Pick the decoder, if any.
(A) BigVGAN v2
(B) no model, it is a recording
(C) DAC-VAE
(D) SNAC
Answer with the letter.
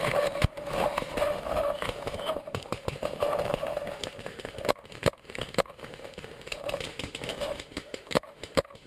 C